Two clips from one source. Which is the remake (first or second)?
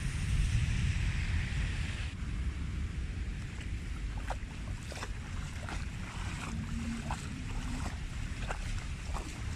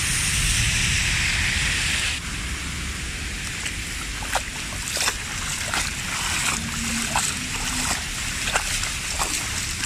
first